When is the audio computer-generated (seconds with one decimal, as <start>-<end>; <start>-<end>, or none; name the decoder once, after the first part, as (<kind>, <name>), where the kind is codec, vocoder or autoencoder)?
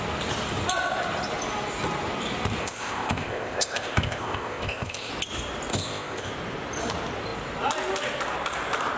2.6-5.1 (codec, ZipCodec); 5.7-6.3